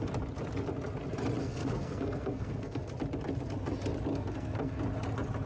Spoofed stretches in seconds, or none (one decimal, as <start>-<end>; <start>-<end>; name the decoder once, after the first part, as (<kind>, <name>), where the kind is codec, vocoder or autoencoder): 1.4-2.9 (codec, SNAC); 4.1-4.8